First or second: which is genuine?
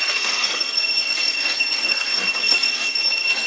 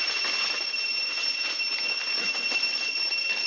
second